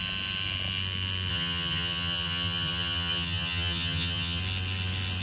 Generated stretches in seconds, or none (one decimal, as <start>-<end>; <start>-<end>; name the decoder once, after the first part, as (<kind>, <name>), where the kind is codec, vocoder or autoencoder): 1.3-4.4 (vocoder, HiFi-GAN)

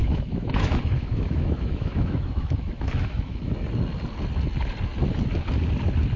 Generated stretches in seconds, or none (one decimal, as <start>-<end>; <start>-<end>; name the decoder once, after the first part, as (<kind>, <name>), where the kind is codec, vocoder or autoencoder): 0.0-3.7 (autoencoder, DAC-VAE)

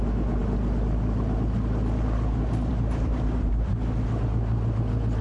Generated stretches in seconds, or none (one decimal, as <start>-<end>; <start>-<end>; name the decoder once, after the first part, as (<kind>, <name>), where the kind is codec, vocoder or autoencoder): none

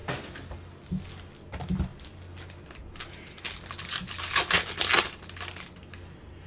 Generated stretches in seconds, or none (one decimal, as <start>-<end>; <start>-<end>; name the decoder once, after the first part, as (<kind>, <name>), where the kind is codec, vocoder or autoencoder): none

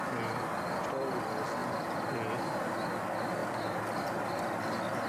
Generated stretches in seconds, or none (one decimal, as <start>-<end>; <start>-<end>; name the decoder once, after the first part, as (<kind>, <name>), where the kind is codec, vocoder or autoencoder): none

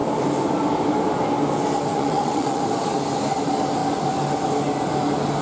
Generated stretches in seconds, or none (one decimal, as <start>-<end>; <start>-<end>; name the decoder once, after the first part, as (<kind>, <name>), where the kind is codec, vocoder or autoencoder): 1.9-2.6 (vocoder, WaveNeXt)